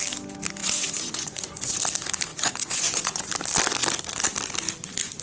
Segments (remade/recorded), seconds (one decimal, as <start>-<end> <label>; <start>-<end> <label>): 0.0-0.6 recorded; 0.6-1.8 remade; 1.8-2.3 recorded; 2.3-3.3 remade; 3.3-5.2 recorded